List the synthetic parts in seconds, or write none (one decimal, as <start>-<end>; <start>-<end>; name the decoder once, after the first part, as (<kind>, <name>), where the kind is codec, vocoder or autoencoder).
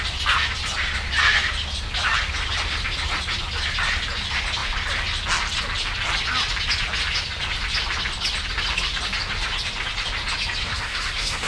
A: 10.6-11.5 (codec, SNAC)